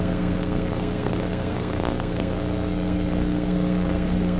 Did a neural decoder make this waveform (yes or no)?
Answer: yes